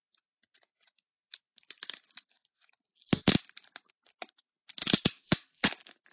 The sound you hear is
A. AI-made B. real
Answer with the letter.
B